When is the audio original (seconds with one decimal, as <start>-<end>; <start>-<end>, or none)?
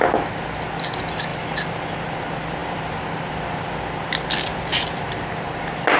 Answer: 0.0-2.6; 3.7-4.7; 5.2-6.0